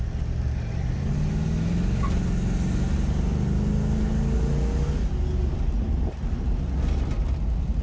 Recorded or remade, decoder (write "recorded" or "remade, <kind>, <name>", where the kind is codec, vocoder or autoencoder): recorded